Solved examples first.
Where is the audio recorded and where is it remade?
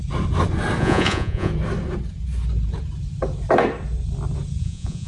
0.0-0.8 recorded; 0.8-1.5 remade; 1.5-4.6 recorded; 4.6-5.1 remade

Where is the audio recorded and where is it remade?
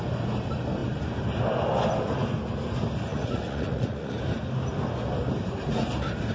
0.0-3.1 recorded; 3.1-4.2 remade; 4.2-6.3 recorded